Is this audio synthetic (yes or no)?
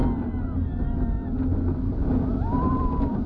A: no